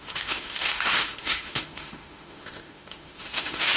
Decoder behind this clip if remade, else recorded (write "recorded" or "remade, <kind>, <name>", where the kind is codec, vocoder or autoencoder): remade, autoencoder, DAC-VAE